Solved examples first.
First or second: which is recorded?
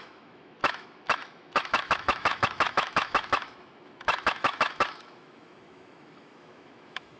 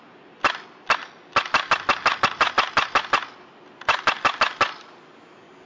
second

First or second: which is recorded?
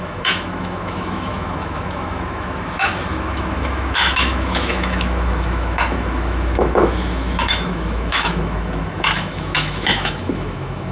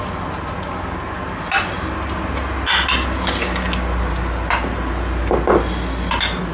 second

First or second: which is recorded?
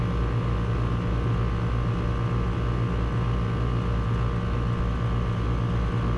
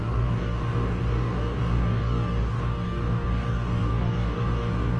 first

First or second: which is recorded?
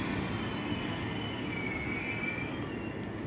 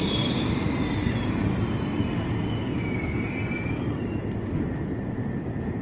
first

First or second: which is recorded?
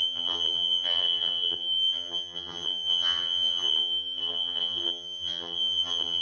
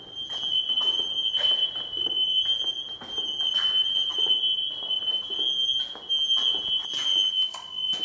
second